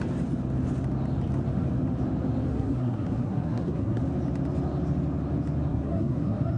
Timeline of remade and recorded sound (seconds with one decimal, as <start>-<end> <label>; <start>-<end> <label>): 0.0-2.5 recorded; 2.5-4.0 remade; 4.0-5.7 recorded; 5.7-6.6 remade